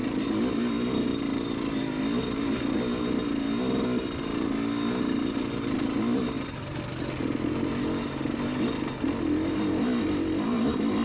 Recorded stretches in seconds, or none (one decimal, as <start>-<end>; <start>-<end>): 0.0-11.0